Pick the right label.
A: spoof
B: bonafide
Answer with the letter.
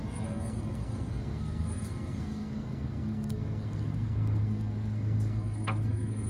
A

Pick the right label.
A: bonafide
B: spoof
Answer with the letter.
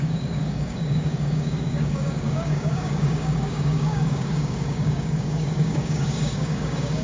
B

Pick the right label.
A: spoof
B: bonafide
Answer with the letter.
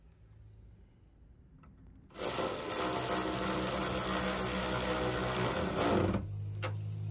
B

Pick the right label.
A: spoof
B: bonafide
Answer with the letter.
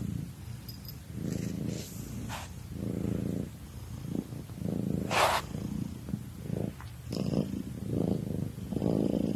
B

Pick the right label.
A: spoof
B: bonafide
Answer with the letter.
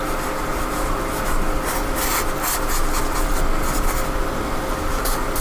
B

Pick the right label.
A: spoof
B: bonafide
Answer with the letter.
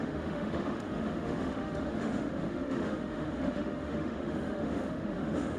A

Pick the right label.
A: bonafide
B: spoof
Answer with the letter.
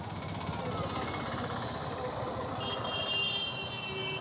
A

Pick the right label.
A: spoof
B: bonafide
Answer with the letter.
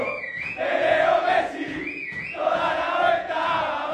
A